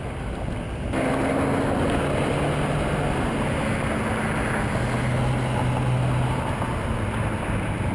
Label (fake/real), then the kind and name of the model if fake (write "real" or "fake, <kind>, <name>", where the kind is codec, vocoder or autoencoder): real